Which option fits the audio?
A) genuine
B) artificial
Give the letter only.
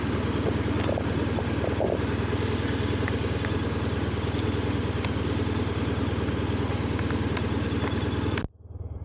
A